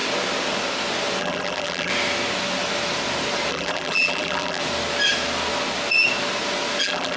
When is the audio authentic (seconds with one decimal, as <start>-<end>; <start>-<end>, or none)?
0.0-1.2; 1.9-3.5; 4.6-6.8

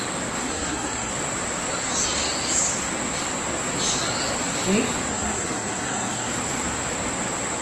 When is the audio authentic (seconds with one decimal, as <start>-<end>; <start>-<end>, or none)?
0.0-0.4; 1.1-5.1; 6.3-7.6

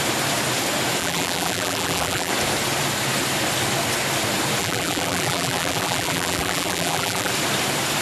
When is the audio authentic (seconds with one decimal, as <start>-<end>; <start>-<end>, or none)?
0.0-1.0; 2.3-4.6; 7.3-8.0

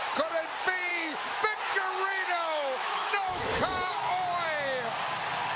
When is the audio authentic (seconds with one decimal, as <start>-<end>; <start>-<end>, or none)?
0.0-0.9; 1.6-2.0; 4.1-5.6

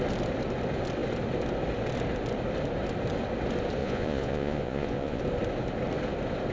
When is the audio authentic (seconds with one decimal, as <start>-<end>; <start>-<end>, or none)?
0.0-3.8; 5.2-6.5

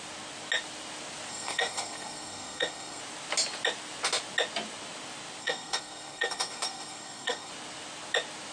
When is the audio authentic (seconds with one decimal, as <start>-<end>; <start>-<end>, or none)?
0.0-1.3; 3.0-5.4; 7.5-8.5